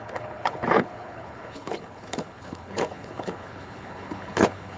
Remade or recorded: remade